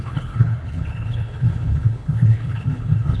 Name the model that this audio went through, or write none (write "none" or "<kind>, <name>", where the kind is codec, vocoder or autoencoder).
codec, HILCodec